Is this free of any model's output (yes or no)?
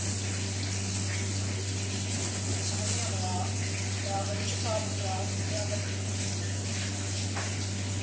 yes